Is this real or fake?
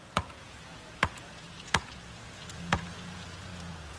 fake